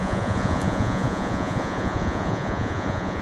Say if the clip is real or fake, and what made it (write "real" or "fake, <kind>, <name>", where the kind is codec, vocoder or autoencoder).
fake, vocoder, Vocos